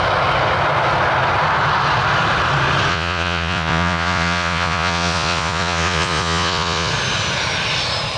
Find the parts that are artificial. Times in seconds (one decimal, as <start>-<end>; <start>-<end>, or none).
2.9-6.9